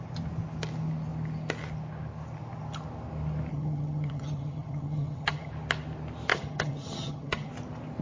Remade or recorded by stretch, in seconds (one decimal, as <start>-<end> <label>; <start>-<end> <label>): 0.0-3.5 recorded; 3.5-5.5 remade; 5.5-6.3 recorded; 6.3-7.5 remade; 7.5-8.0 recorded